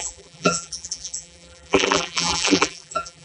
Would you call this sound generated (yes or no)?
yes